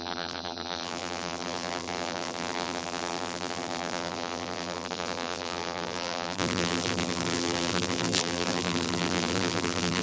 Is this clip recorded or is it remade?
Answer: remade